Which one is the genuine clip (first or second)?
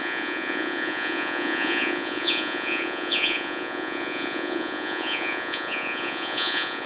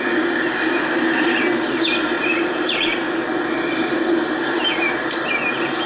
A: second